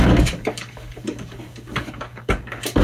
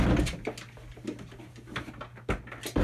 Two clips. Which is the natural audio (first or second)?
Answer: second